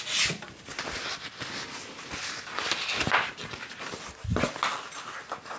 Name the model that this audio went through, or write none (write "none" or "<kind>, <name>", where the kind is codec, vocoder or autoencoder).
none